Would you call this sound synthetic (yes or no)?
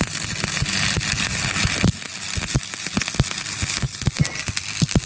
no